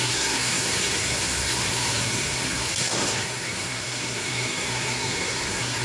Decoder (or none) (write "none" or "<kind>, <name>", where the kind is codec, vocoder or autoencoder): codec, SNAC